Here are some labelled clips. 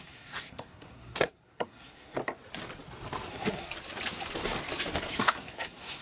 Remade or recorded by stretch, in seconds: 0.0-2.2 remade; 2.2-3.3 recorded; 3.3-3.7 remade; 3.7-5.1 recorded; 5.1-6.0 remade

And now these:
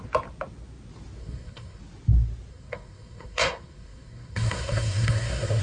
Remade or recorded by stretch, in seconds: 0.0-1.2 recorded; 1.2-1.8 remade; 1.8-2.5 recorded; 2.5-5.6 remade